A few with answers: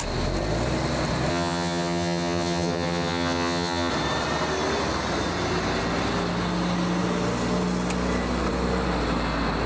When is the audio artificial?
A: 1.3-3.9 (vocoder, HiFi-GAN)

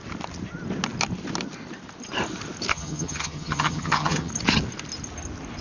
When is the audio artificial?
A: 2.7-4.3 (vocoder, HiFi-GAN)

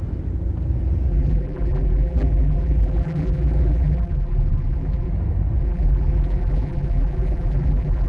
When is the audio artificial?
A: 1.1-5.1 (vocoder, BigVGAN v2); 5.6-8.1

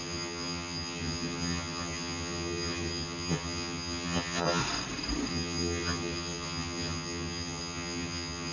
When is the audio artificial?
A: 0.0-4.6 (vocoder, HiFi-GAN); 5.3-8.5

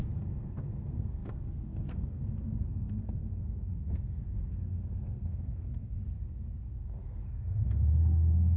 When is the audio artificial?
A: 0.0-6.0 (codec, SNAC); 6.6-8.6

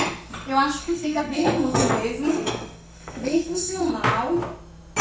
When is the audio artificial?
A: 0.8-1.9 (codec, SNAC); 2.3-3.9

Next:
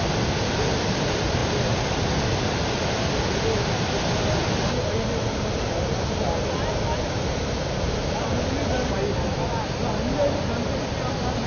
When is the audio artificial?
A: none